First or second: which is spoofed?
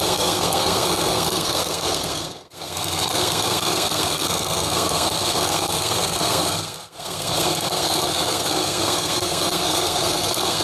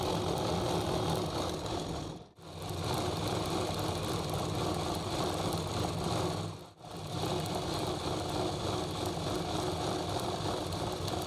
first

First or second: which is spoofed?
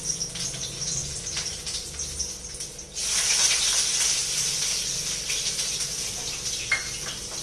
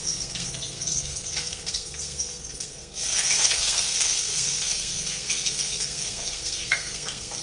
second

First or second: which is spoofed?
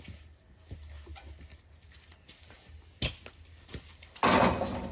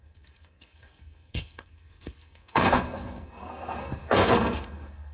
second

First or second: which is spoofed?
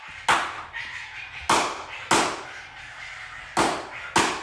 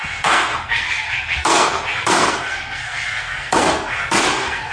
second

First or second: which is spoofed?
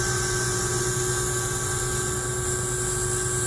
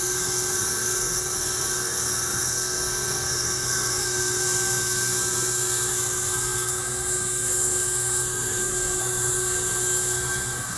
second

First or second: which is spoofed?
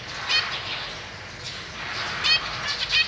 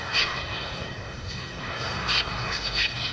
second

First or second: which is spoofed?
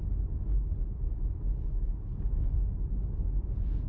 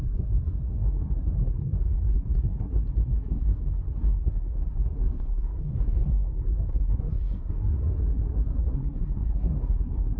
second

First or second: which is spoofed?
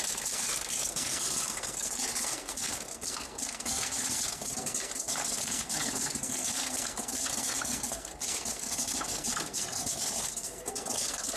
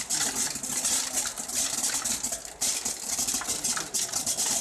first